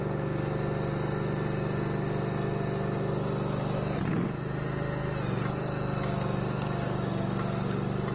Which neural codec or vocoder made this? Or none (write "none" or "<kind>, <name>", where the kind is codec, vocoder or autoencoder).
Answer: none